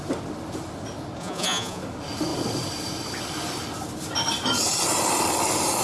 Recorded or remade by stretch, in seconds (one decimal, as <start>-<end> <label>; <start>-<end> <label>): 0.0-1.2 recorded; 1.2-1.8 remade; 1.8-5.8 recorded